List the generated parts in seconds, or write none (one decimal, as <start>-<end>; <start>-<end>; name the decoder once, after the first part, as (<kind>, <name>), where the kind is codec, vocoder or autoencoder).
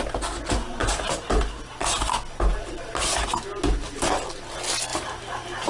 0.8-1.4 (vocoder, BigVGAN v2); 4.9-5.7